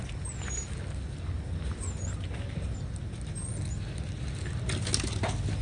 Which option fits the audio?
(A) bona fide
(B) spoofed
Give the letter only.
A